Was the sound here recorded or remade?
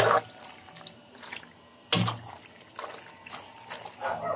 recorded